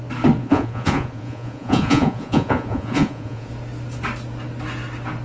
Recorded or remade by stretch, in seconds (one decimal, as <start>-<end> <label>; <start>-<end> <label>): 0.0-0.4 recorded; 0.4-3.5 remade; 3.5-5.2 recorded